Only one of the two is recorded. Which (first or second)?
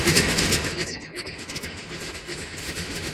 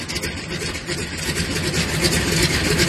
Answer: second